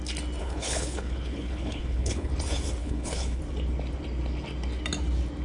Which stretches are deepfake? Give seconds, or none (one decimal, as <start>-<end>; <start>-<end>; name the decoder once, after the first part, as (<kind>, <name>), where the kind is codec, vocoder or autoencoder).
0.4-2.3 (codec, HILCodec); 2.8-3.4